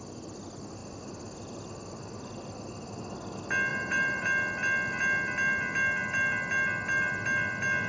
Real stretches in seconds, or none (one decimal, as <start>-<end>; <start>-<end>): 0.0-3.7; 4.2-7.9